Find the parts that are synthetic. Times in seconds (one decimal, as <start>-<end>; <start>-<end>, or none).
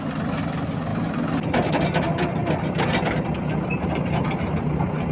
none